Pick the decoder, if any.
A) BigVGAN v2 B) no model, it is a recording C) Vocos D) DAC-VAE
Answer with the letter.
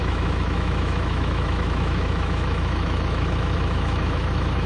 D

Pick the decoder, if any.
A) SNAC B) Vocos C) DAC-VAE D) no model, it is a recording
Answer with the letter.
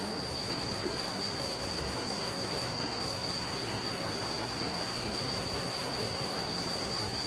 A